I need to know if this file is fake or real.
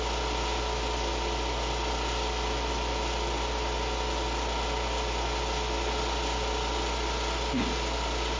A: real